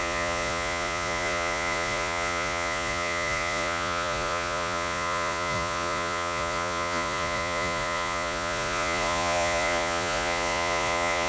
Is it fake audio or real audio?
fake